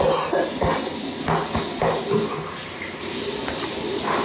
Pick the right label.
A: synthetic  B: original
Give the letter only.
B